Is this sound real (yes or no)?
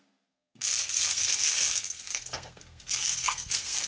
no